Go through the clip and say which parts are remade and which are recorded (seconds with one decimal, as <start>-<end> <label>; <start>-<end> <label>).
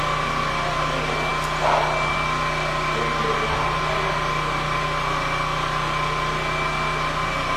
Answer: 0.0-7.6 recorded